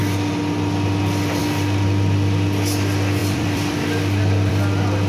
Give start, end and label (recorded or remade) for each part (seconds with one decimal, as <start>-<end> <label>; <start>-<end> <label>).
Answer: 0.0-1.4 remade; 1.4-3.2 recorded; 3.2-4.5 remade; 4.5-5.1 recorded

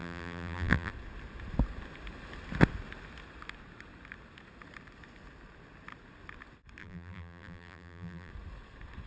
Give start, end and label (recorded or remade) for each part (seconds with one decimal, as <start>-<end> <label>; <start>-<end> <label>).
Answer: 0.0-0.9 remade; 0.9-6.8 recorded; 6.8-8.3 remade; 8.3-9.1 recorded

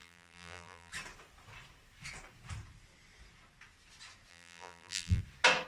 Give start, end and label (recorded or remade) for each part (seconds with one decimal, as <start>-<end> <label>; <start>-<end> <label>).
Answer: 0.0-0.9 remade; 0.9-4.3 recorded; 4.3-5.2 remade; 5.2-5.7 recorded

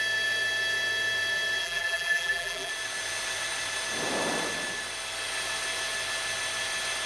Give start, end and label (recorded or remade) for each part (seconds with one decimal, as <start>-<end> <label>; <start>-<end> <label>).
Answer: 0.0-1.6 recorded; 1.6-2.7 remade; 2.7-7.1 recorded

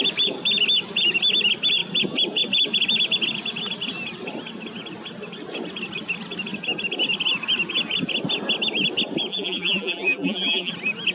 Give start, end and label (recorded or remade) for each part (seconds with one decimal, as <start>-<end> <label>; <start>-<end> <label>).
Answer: 0.0-9.3 recorded; 9.3-10.7 remade; 10.7-11.1 recorded

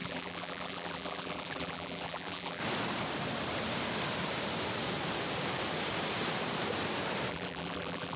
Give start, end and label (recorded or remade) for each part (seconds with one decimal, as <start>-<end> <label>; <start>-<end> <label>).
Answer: 0.0-2.6 remade; 2.6-7.3 recorded; 7.3-8.2 remade

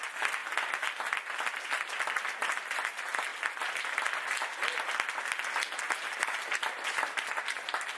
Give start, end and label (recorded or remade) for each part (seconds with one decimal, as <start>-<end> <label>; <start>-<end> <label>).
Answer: 0.0-0.4 remade; 0.4-1.7 recorded; 1.7-3.3 remade; 3.3-5.9 recorded; 5.9-8.0 remade